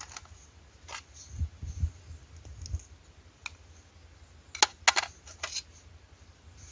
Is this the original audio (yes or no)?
yes